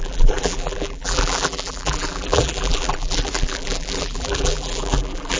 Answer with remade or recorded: remade